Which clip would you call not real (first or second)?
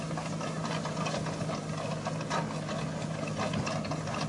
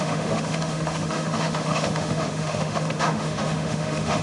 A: second